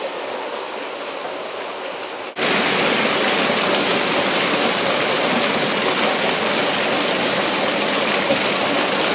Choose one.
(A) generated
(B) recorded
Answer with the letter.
B